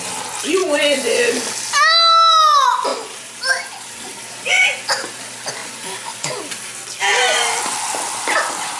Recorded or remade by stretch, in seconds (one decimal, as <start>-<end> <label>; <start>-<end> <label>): 0.0-0.6 recorded; 0.6-1.3 remade; 1.3-5.6 recorded; 5.6-6.4 remade; 6.4-8.8 recorded